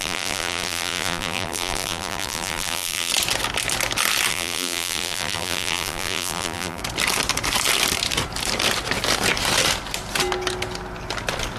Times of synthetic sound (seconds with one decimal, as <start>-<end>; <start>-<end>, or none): 0.0-3.1; 4.3-6.8